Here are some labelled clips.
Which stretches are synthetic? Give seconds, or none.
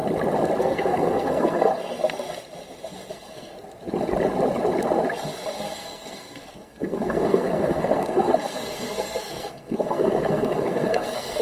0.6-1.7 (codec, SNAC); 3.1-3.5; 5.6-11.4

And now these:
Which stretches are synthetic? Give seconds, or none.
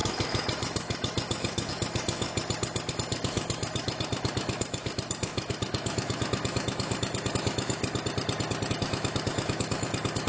0.0-2.3 (autoencoder, DAC-VAE); 2.9-7.8; 8.7-10.3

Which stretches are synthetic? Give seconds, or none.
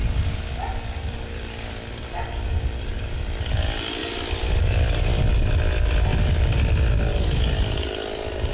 none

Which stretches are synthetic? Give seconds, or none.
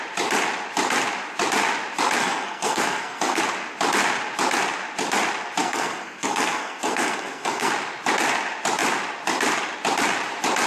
2.2-3.4 (codec, SNAC); 5.6-7.7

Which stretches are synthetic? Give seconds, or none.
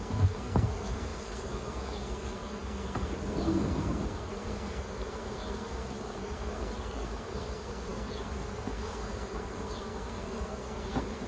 0.0-11.3 (codec, SNAC)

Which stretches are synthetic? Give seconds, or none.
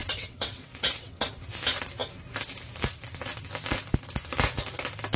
0.0-1.3 (vocoder, WaveNeXt)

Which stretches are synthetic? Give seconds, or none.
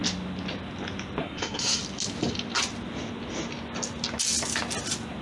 1.2-1.8 (codec, SNAC)